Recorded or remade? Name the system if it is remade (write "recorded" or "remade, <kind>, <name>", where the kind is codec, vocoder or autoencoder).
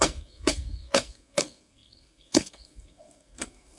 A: remade, codec, SNAC